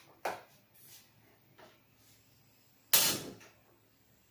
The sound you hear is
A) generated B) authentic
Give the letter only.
B